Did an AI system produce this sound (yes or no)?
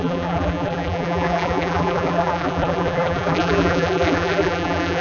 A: yes